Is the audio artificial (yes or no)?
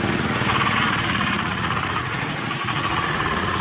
yes